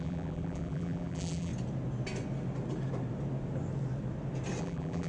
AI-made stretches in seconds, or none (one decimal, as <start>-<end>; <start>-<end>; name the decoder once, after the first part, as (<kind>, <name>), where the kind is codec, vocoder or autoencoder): 0.0-1.5 (vocoder, BigVGAN v2); 4.6-5.1